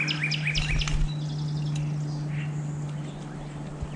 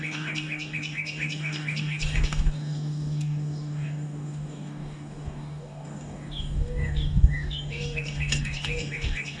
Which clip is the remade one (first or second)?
second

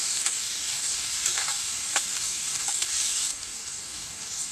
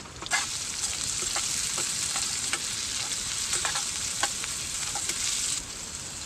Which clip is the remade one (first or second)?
first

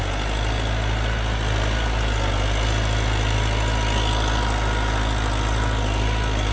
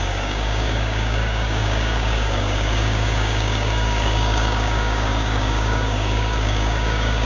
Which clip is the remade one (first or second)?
second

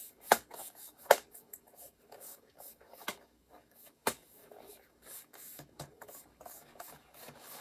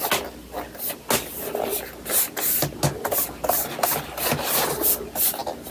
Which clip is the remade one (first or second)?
first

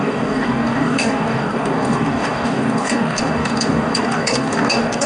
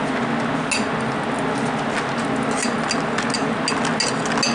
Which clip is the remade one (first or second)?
first